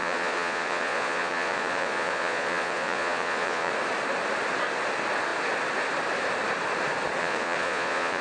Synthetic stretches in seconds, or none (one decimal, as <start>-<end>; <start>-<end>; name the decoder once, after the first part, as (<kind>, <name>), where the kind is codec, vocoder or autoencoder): 0.0-3.7 (vocoder, Vocos); 7.2-8.2